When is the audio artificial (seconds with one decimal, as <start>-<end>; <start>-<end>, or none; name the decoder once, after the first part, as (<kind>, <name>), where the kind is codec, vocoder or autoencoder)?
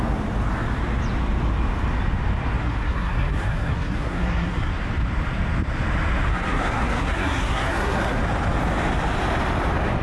2.6-4.7 (codec, SNAC); 6.3-8.2